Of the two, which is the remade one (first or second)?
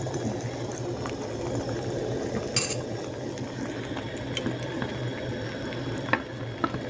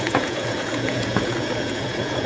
second